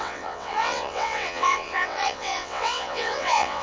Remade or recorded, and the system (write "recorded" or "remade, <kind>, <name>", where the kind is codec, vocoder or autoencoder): remade, vocoder, WaveNeXt